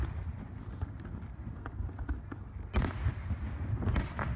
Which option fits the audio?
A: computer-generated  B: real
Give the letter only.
B